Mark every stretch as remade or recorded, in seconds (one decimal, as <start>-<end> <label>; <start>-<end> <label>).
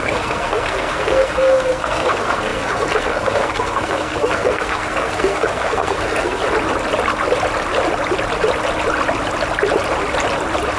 0.0-6.4 remade; 6.4-10.8 recorded